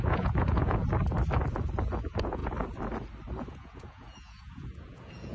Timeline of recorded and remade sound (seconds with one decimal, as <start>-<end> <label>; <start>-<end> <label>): 0.0-0.8 remade; 0.8-2.0 recorded; 2.0-2.4 remade; 2.4-3.5 recorded; 3.5-5.3 remade

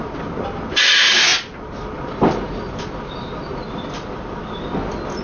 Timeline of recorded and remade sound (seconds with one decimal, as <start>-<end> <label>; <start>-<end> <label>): 0.0-5.2 recorded